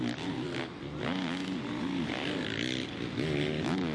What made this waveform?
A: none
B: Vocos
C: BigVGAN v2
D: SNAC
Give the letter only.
A